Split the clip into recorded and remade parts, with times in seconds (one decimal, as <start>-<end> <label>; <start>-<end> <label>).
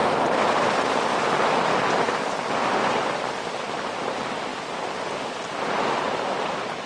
0.0-4.1 recorded; 4.1-4.5 remade; 4.5-5.2 recorded; 5.2-6.9 remade